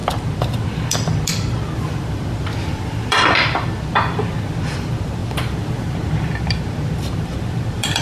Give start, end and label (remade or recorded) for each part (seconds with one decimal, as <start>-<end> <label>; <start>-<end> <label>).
0.0-8.0 remade